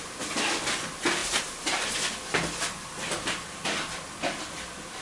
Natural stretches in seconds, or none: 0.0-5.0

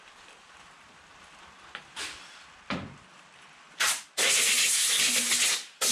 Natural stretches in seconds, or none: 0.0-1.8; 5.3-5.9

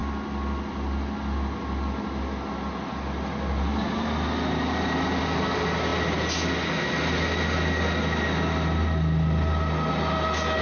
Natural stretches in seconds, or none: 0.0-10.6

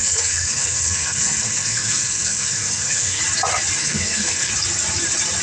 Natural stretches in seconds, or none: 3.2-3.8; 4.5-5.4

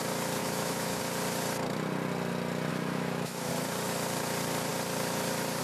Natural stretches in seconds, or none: 0.0-0.4; 1.0-2.7; 3.5-5.6